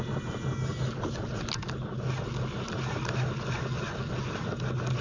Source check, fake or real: real